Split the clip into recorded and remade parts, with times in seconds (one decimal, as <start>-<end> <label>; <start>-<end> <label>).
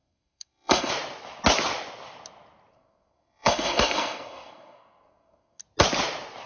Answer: 0.0-0.9 remade; 0.9-2.7 recorded; 2.7-5.6 remade; 5.6-6.5 recorded